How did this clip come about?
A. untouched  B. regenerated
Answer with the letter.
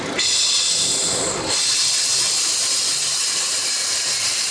A